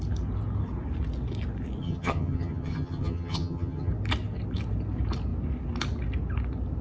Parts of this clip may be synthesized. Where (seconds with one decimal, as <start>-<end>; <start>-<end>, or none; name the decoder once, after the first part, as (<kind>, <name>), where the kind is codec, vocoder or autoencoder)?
1.8-3.9 (vocoder, HiFi-GAN)